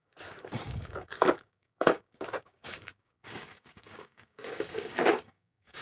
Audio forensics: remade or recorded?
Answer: remade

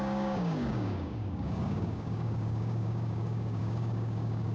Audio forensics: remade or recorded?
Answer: remade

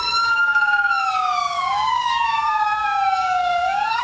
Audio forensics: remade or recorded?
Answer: remade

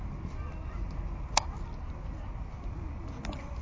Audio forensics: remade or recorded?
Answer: recorded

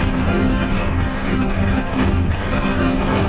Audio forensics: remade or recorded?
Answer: remade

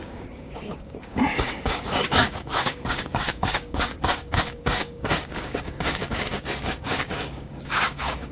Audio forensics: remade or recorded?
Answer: remade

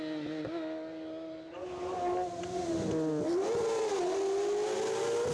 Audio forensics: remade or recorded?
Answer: recorded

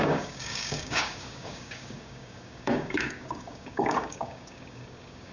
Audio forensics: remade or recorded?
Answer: remade